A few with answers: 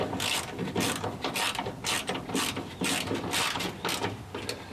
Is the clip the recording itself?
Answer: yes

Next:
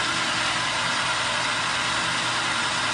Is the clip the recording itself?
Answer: yes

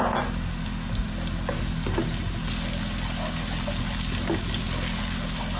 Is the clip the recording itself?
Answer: yes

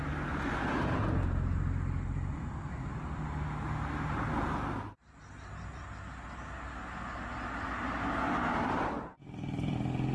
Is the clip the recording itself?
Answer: yes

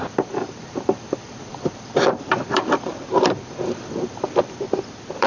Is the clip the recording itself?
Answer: no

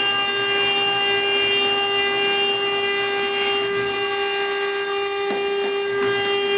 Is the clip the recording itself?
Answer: yes